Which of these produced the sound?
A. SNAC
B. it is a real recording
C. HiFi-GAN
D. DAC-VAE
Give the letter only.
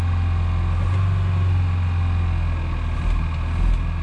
B